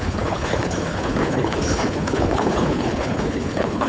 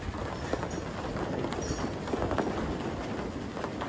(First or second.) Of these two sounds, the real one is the second